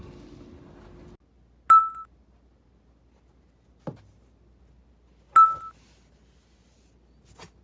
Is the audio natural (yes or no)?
yes